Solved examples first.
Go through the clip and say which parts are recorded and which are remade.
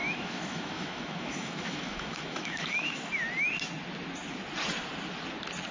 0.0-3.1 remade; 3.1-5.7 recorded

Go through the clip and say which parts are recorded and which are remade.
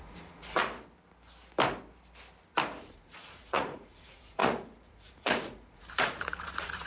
0.0-0.6 remade; 0.6-2.8 recorded; 2.8-6.9 remade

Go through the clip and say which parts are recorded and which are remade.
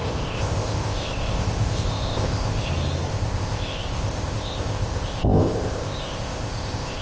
0.0-2.7 remade; 2.7-3.1 recorded; 3.1-7.0 remade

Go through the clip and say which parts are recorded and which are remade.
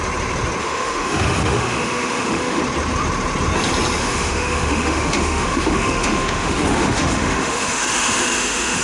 0.0-0.6 recorded; 0.6-2.6 remade; 2.6-4.0 recorded; 4.0-8.8 remade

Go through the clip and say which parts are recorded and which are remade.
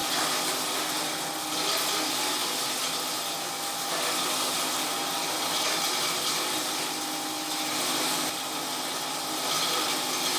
0.0-10.4 recorded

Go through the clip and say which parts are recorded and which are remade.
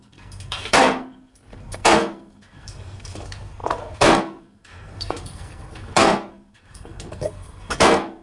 0.0-8.2 remade